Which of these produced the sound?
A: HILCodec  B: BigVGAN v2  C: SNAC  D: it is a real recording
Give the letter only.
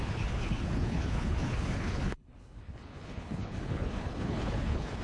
A